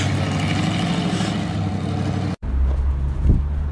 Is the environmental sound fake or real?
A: real